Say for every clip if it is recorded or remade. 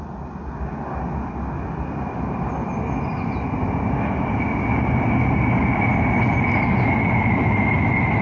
recorded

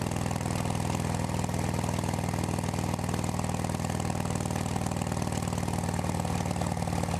recorded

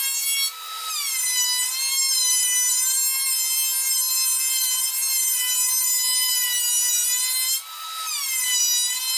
recorded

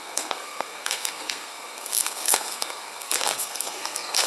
remade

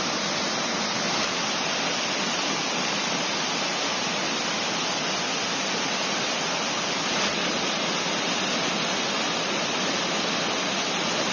recorded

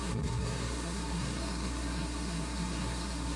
remade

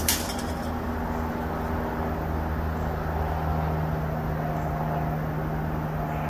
recorded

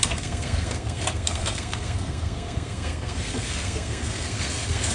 remade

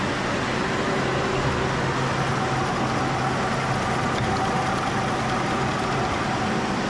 recorded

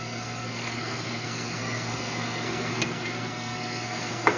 remade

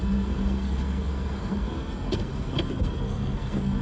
remade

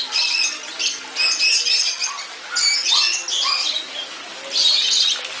recorded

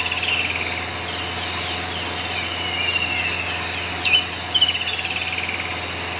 recorded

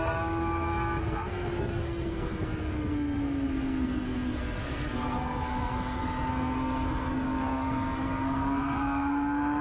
remade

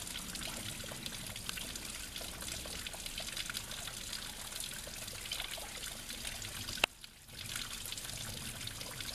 recorded